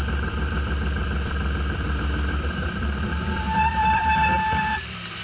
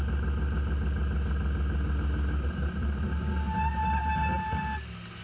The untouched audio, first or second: second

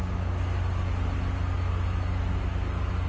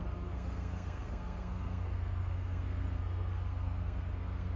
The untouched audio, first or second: first